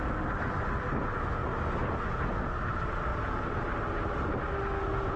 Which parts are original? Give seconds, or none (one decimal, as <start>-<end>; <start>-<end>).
0.0-1.4; 2.4-3.1; 4.5-5.2